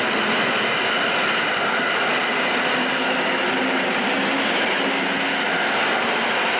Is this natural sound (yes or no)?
yes